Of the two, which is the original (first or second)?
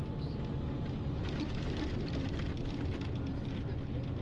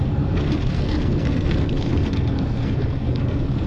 first